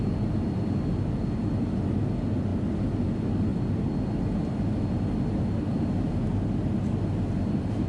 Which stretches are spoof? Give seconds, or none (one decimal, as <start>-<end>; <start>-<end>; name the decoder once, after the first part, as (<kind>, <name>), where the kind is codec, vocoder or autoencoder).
none